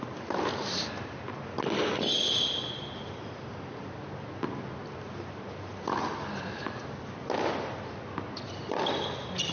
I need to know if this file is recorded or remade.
recorded